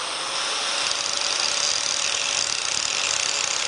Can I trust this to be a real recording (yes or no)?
yes